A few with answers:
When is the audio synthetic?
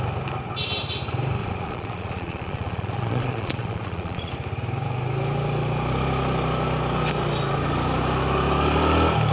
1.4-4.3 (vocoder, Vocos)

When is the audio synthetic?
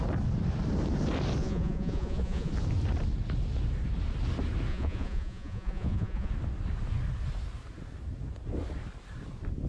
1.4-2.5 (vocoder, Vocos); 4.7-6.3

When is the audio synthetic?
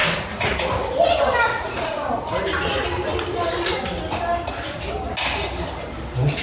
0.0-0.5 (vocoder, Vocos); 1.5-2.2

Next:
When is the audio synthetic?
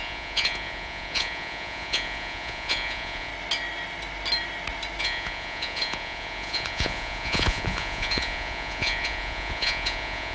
0.0-3.3 (vocoder, Vocos); 5.0-10.3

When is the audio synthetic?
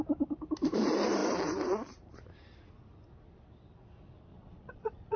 4.3-5.2 (vocoder, Vocos)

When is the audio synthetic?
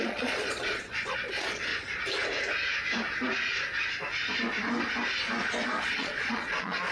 0.0-1.7 (vocoder, Vocos); 5.8-6.9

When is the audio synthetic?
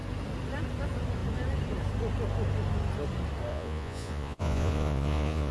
3.5-5.5 (vocoder, Vocos)